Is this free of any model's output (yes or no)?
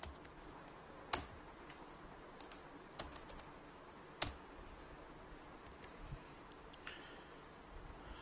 yes